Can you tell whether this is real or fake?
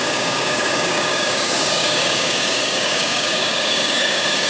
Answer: fake